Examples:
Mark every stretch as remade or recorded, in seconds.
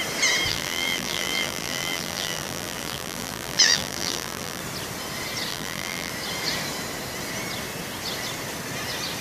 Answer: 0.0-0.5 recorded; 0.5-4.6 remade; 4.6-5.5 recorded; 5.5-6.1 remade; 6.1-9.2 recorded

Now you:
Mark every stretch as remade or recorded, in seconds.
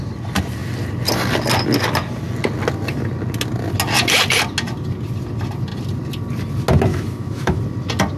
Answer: 0.0-6.9 recorded; 6.9-7.6 remade; 7.6-8.2 recorded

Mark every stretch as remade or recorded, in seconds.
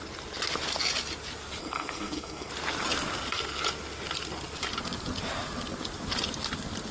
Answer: 0.0-1.6 recorded; 1.6-2.5 remade; 2.5-6.9 recorded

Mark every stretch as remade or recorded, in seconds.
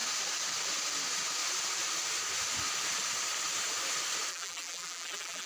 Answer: 0.0-4.3 recorded; 4.3-5.5 remade